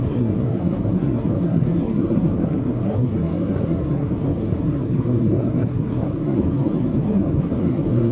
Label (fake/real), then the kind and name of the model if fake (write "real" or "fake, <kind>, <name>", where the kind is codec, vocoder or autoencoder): fake, codec, SNAC